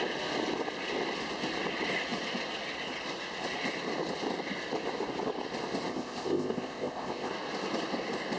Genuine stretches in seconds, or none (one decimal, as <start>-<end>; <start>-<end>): 0.0-5.9; 7.3-8.4